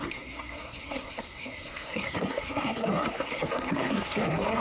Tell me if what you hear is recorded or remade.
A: remade